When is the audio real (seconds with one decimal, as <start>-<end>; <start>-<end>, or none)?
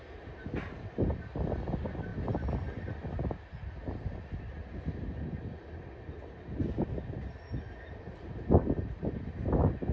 0.0-9.9